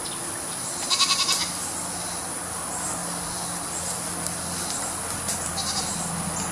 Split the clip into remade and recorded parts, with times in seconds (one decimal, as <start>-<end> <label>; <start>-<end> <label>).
0.0-1.8 remade; 1.8-3.0 recorded; 3.0-5.0 remade; 5.0-6.5 recorded